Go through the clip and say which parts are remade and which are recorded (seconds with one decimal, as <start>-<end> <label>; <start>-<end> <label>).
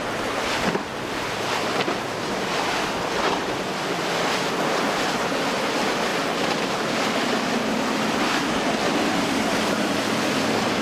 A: 0.0-10.8 recorded